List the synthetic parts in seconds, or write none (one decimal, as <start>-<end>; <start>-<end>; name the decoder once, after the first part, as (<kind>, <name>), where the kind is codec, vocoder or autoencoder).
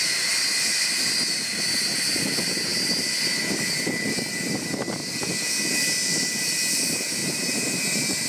7.2-8.3 (vocoder, BigVGAN v2)